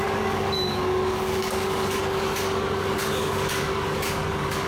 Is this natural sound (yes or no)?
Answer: no